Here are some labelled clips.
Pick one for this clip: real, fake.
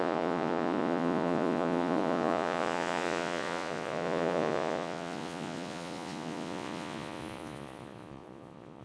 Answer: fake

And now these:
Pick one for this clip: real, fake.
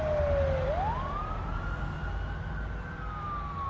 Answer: real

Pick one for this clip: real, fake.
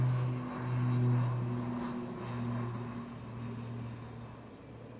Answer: real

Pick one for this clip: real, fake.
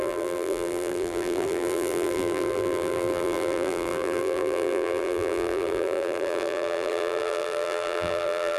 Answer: fake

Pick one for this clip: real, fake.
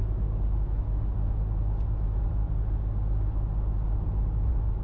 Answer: real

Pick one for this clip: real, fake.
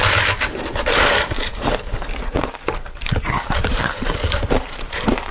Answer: fake